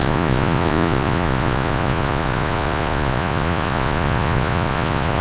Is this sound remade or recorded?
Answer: remade